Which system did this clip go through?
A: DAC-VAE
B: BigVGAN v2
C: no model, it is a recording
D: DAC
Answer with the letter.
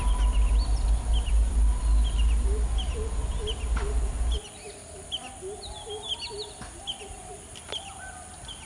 C